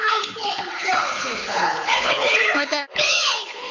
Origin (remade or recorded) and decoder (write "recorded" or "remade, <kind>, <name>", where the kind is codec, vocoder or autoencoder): remade, codec, HILCodec